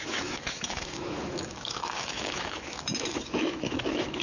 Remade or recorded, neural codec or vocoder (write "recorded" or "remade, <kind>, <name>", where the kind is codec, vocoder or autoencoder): remade, autoencoder, DAC-VAE